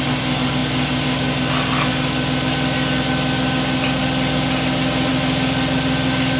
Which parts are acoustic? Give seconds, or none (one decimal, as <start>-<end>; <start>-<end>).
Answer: 0.0-6.4